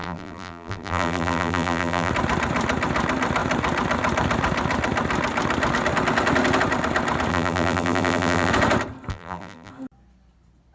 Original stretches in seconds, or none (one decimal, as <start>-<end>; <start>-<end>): 2.1-7.3; 8.5-9.1; 9.7-10.7